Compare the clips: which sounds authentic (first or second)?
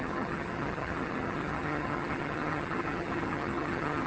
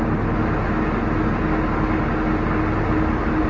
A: second